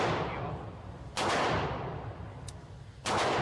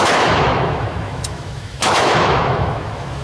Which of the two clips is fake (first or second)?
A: second